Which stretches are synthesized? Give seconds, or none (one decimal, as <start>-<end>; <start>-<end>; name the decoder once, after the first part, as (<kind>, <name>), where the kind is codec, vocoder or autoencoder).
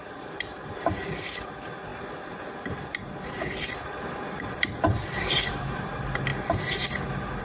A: 0.0-1.9 (vocoder, BigVGAN v2); 4.3-6.3